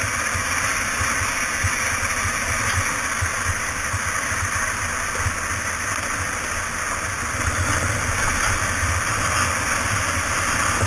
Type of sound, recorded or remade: recorded